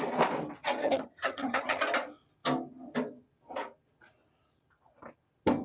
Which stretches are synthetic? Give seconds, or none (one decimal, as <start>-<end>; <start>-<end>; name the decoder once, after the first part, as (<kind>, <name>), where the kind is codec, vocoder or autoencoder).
0.8-1.8 (vocoder, HiFi-GAN)